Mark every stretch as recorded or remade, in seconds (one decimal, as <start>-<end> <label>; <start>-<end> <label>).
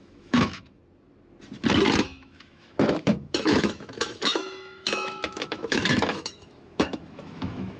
0.0-0.8 remade; 0.8-2.0 recorded; 2.0-7.8 remade